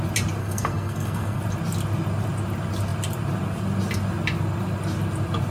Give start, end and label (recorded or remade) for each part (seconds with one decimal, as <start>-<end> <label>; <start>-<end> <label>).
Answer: 0.0-0.4 recorded; 0.4-1.4 remade; 1.4-5.5 recorded